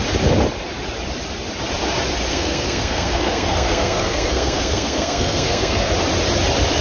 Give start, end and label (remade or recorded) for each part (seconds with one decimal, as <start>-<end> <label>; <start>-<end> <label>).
0.0-2.3 recorded; 2.3-5.9 remade; 5.9-6.8 recorded